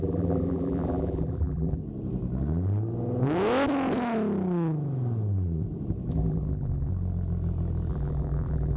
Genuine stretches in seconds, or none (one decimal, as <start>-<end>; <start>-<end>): 1.8-6.1; 6.9-7.9